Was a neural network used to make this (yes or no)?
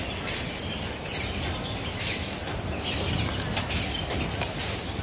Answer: no